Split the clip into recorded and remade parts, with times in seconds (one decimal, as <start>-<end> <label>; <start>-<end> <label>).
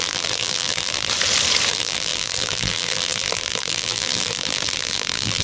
0.0-1.1 remade; 1.1-1.7 recorded; 1.7-5.4 remade